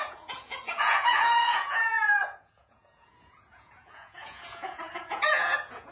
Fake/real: fake